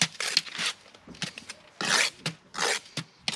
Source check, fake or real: real